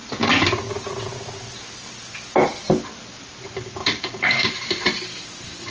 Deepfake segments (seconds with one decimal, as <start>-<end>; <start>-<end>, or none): 3.8-4.5